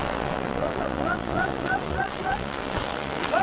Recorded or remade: remade